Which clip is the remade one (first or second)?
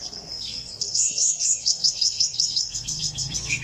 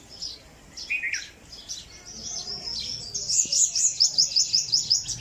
first